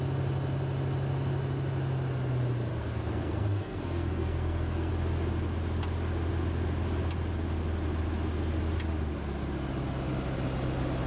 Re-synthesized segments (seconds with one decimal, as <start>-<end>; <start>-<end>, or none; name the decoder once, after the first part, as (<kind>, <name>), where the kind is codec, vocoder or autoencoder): 2.7-4.9 (codec, SNAC)